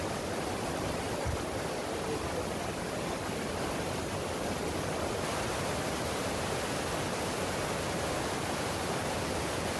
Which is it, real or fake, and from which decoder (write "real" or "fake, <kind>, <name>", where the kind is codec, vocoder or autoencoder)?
real